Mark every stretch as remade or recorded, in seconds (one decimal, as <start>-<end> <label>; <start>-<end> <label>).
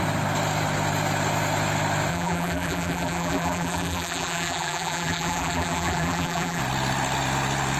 0.0-2.1 recorded; 2.1-6.6 remade; 6.6-7.8 recorded